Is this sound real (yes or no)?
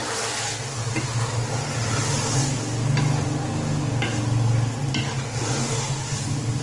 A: yes